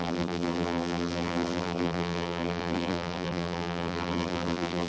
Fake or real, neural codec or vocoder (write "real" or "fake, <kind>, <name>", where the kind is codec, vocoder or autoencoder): fake, vocoder, BigVGAN v2